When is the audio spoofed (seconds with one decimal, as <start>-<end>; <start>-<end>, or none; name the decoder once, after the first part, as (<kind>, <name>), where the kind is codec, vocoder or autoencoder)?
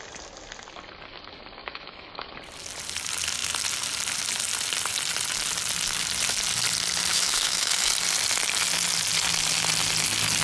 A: 1.6-2.3 (autoencoder, DAC-VAE); 7.1-7.9